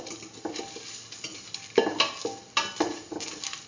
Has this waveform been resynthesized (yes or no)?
no